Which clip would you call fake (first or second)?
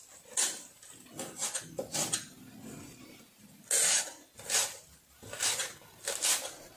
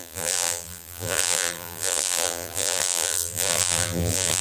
second